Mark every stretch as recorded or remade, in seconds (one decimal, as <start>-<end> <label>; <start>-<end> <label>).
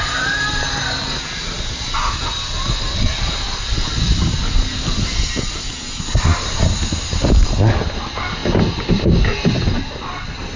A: 0.0-10.6 recorded